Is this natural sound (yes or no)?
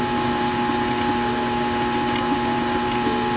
yes